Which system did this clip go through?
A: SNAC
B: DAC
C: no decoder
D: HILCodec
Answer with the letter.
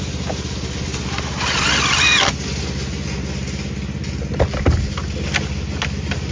C